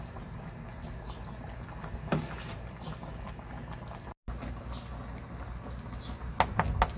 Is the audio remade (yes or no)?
no